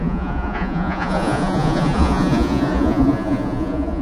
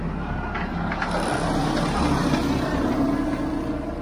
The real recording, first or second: second